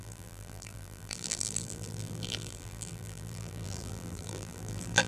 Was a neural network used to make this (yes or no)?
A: yes